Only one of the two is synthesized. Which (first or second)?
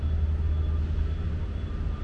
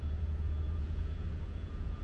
second